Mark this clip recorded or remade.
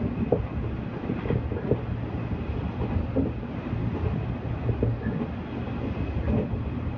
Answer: recorded